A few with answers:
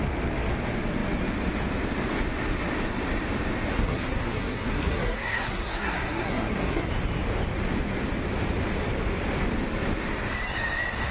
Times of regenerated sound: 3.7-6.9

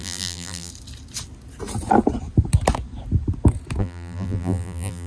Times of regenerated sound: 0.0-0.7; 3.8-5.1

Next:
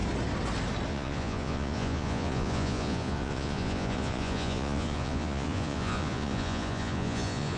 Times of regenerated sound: 0.9-7.6